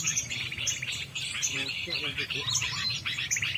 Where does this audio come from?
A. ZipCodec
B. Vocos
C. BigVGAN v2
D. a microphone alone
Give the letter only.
C